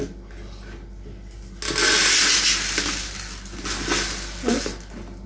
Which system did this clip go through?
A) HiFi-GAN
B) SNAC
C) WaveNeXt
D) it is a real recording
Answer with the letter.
D